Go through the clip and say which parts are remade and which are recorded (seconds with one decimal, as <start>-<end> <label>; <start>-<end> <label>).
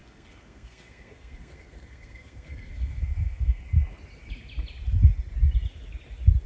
0.0-3.6 remade; 3.6-6.5 recorded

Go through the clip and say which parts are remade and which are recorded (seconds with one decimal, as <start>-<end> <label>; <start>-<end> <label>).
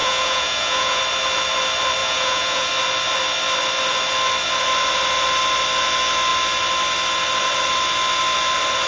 0.0-1.0 remade; 1.0-2.0 recorded; 2.0-2.7 remade; 2.7-8.9 recorded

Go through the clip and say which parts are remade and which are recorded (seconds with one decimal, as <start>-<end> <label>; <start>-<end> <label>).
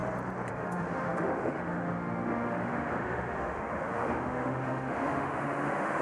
0.0-0.5 recorded; 0.5-6.0 remade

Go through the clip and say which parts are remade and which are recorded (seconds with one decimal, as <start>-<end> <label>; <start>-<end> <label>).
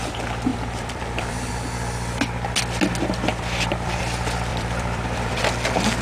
0.0-0.5 recorded; 0.5-1.5 remade; 1.5-3.3 recorded; 3.3-4.0 remade; 4.0-4.5 recorded; 4.5-5.4 remade; 5.4-6.0 recorded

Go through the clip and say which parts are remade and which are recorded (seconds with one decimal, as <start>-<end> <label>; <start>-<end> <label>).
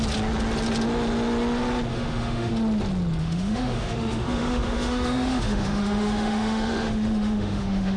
0.0-1.9 recorded; 1.9-2.5 remade; 2.5-3.2 recorded; 3.2-8.0 remade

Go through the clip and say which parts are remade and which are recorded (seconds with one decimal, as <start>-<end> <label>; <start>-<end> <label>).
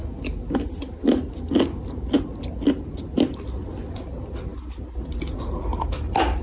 0.0-6.4 recorded